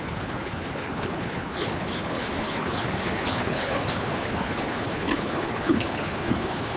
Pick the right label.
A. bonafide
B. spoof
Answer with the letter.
B